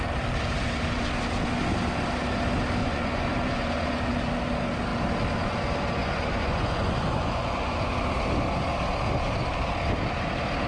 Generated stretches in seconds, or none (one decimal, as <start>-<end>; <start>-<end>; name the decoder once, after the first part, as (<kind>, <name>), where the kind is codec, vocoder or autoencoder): 2.8-4.0 (vocoder, Vocos); 6.0-8.0

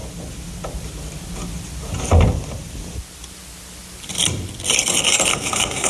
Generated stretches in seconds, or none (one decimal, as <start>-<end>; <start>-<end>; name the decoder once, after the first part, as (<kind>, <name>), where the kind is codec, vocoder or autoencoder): 5.3-5.9 (codec, SNAC)